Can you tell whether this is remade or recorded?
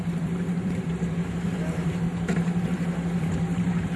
remade